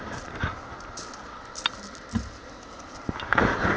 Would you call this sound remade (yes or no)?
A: no